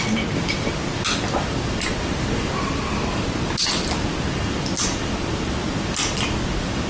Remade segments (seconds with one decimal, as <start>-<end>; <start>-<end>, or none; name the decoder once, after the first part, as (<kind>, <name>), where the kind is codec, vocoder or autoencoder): none